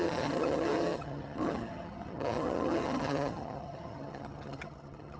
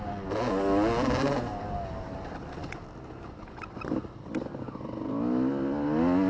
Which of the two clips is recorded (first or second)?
second